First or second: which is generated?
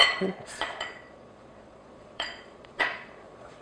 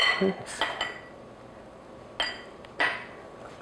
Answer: first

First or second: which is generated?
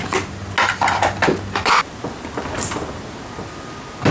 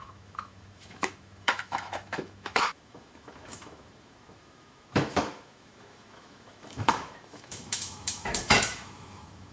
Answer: second